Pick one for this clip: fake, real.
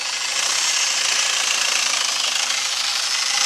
real